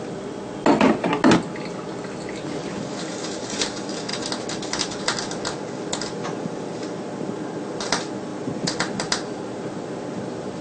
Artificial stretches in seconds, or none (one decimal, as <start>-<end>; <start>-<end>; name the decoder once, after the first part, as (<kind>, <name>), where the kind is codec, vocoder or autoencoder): none